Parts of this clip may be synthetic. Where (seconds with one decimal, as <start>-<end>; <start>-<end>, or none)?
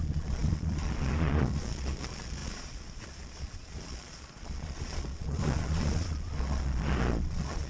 0.0-7.7